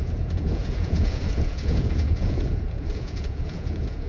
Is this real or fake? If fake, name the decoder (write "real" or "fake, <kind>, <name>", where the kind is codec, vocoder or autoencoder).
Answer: fake, vocoder, Vocos